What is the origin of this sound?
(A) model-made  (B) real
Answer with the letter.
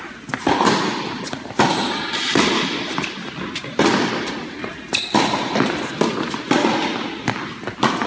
B